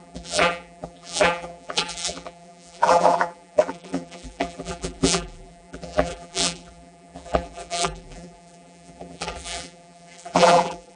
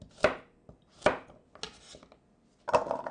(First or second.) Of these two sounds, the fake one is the first